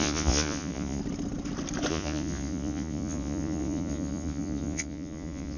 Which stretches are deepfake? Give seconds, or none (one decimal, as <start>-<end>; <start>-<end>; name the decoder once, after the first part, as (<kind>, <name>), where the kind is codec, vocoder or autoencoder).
0.0-1.0 (vocoder, Vocos); 1.9-5.6